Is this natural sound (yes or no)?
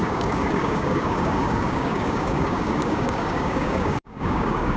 no